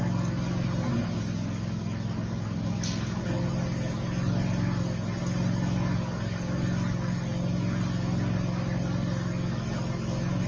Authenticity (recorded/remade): recorded